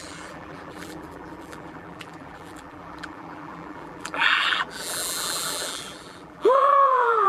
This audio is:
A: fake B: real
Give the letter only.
A